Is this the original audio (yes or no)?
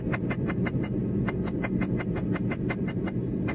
yes